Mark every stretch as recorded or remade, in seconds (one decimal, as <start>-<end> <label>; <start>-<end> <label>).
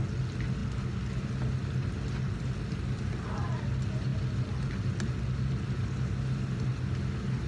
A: 0.0-7.5 recorded